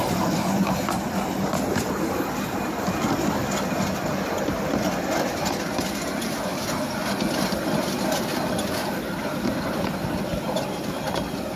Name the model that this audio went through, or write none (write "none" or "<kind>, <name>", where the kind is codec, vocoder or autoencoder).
none